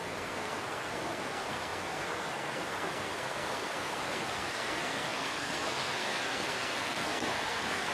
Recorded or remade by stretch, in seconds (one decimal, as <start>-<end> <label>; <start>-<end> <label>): 0.0-7.9 remade